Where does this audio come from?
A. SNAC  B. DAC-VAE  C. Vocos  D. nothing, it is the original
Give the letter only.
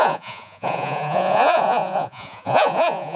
C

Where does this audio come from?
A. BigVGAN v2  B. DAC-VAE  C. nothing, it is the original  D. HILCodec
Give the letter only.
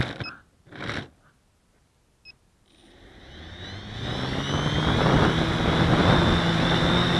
C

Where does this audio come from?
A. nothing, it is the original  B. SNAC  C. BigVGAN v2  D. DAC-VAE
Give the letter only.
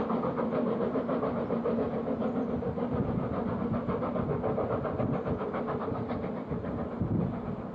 A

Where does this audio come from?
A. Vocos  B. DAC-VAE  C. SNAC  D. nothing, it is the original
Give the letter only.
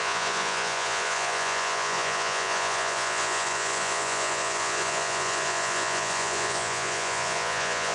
A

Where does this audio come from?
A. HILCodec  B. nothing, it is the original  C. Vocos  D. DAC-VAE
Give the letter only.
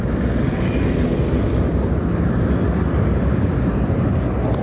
B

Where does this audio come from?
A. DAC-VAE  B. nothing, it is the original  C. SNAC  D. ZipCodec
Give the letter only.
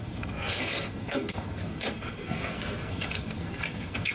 C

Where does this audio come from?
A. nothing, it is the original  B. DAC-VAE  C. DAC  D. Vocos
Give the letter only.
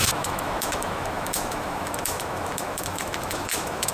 B